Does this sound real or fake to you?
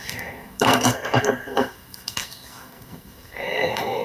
fake